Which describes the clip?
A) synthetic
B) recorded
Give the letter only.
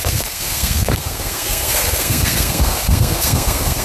A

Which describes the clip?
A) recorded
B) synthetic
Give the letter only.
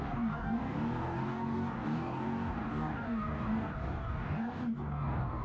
B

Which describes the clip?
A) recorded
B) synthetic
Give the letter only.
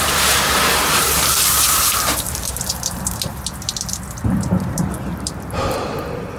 B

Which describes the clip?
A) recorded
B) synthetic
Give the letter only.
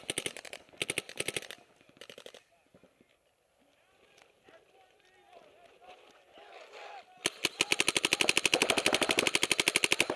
A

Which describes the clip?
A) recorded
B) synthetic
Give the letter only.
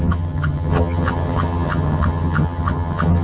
B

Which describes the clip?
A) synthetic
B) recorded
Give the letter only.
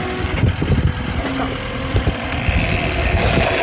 B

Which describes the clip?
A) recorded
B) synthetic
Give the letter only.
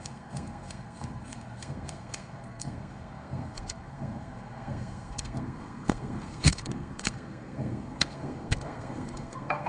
B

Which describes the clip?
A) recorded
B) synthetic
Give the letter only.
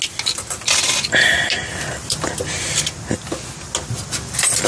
A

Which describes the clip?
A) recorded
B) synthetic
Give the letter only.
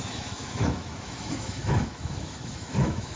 B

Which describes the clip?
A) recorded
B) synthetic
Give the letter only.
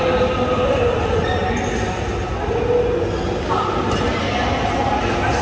A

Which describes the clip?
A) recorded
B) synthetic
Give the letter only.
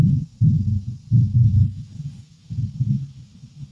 A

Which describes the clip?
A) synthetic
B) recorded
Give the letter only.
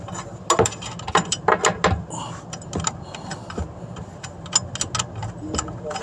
B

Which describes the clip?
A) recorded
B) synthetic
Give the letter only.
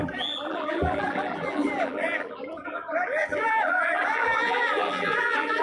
B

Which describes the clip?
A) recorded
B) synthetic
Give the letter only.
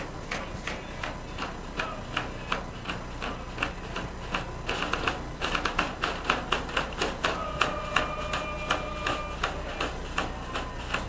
A